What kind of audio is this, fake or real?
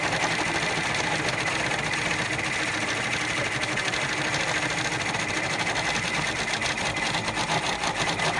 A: real